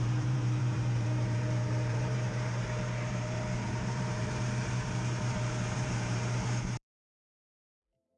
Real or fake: fake